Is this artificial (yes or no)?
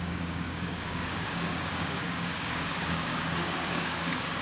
yes